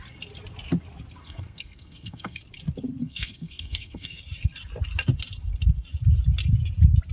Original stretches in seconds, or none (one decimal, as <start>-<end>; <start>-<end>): 0.0-1.2; 2.4-3.0; 4.2-7.1

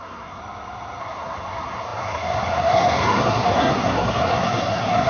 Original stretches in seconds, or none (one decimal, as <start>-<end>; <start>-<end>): 0.4-1.0